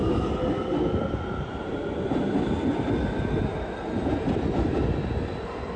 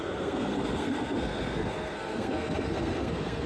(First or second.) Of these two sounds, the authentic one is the first